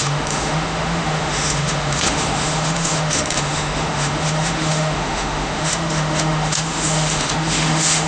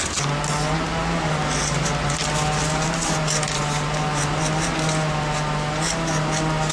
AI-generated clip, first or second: first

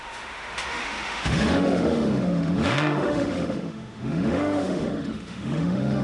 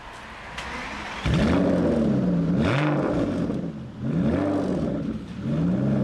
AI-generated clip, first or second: first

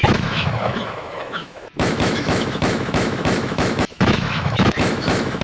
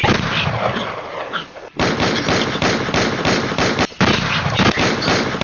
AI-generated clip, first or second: first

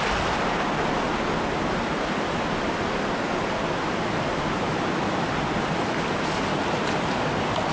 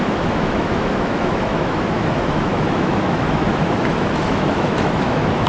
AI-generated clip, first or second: second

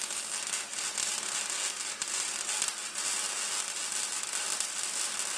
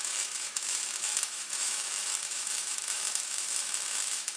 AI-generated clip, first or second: second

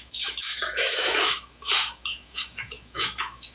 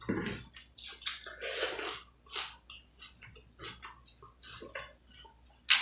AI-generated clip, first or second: first